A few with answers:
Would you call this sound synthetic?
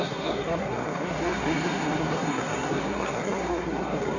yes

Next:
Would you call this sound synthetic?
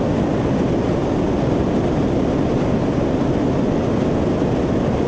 no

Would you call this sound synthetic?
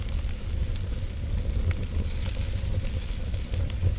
no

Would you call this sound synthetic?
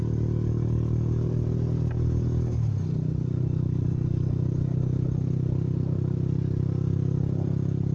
no